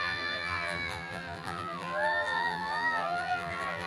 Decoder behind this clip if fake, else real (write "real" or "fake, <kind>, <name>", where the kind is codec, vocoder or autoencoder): fake, vocoder, BigVGAN v2